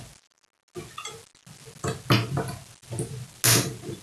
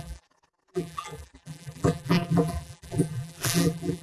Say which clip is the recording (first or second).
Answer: first